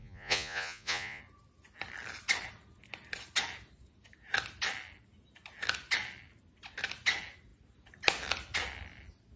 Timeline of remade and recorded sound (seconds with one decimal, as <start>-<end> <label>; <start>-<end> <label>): 0.0-1.2 remade; 1.2-9.4 recorded